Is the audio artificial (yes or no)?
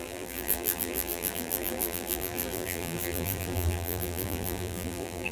yes